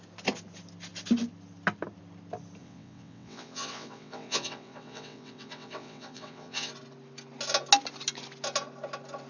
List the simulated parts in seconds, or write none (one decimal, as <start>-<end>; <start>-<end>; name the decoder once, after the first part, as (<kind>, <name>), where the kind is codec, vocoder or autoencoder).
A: 2.6-6.7 (vocoder, WaveNeXt)